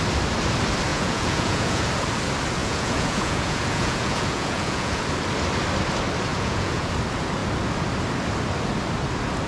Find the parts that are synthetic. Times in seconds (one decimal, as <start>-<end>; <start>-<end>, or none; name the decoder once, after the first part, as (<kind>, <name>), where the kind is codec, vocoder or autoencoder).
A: 0.9-1.8 (vocoder, Vocos); 2.6-5.0; 6.3-6.9